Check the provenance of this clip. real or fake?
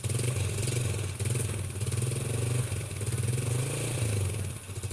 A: real